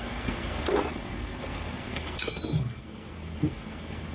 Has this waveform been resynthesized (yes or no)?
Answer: yes